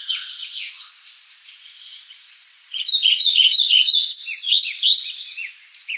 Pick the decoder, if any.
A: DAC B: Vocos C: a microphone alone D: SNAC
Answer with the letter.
B